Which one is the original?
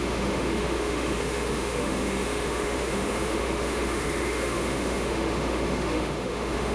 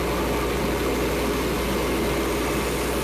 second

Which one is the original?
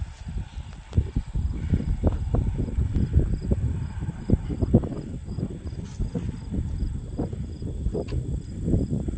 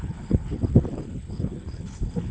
first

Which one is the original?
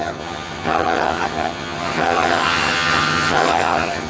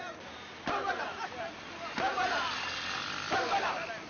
second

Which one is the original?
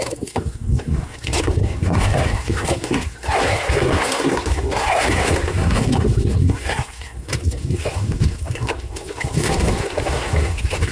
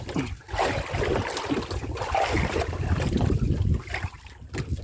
second